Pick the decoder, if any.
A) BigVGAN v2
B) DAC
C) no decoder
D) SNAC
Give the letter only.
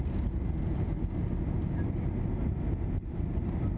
C